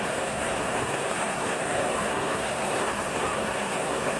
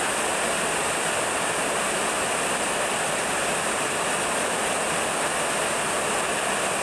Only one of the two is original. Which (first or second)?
second